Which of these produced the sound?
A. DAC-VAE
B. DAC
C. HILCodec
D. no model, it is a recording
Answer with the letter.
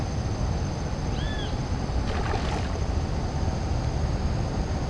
D